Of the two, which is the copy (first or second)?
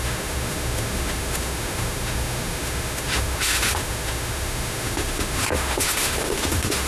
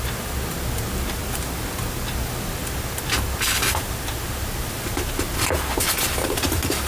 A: first